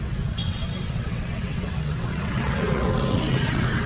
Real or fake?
fake